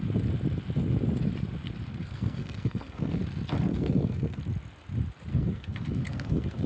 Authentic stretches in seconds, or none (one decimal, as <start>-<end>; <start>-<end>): 0.0-1.9; 3.2-3.7; 4.4-5.3